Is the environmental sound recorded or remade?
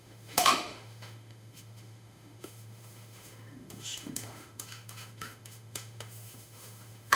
remade